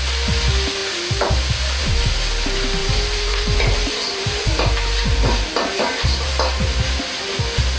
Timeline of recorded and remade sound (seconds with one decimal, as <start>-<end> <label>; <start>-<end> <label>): 0.0-2.8 recorded; 2.8-6.3 remade; 6.3-7.8 recorded